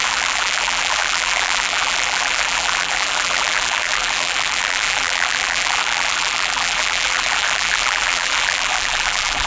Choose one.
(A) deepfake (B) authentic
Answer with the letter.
A